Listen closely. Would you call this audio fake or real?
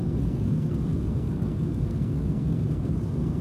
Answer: fake